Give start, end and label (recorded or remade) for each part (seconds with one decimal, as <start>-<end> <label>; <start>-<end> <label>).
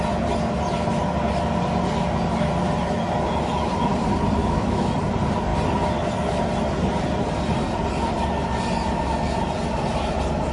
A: 0.0-4.4 recorded; 4.4-4.9 remade; 4.9-10.5 recorded